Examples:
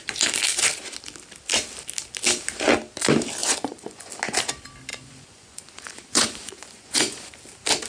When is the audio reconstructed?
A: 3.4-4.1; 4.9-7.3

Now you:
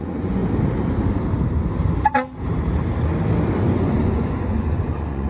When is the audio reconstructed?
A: 0.0-0.4; 3.6-5.3

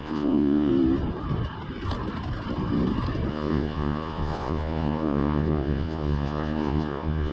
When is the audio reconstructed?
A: 0.0-0.7; 3.3-7.3

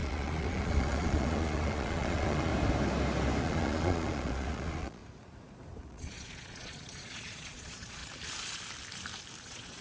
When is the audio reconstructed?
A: 0.0-2.5; 3.4-5.0; 5.9-8.0; 9.4-9.8

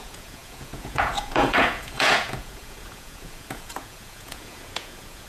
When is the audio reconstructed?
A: 0.0-5.3

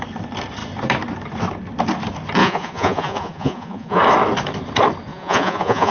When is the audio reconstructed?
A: 2.4-4.0; 5.1-5.9

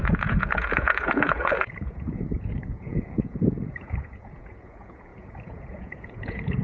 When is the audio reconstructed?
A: 0.0-6.6